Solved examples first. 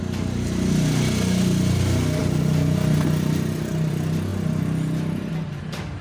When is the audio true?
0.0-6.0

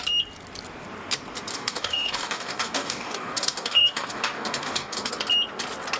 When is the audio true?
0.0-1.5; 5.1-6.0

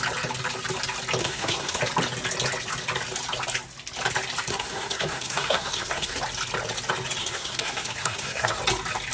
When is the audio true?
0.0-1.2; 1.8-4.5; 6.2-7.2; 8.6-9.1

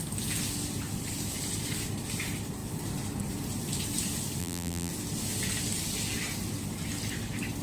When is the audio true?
0.0-4.4; 4.9-7.6

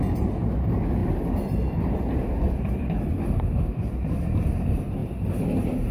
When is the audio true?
0.0-1.0; 4.5-5.9

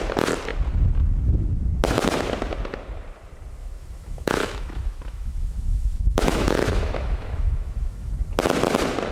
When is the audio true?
0.0-3.6; 8.1-9.1

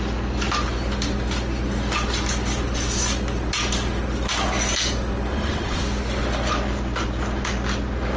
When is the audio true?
0.0-5.3; 5.8-8.2